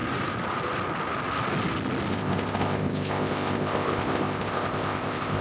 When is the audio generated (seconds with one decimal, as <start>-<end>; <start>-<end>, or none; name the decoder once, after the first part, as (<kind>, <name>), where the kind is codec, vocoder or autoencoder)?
2.1-5.4 (codec, ZipCodec)